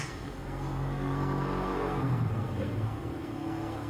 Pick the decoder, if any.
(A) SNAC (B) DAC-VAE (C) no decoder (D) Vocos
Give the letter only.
A